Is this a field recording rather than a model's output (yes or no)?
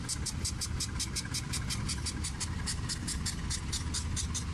yes